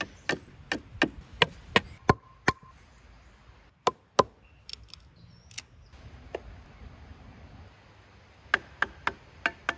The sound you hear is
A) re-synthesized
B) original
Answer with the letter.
B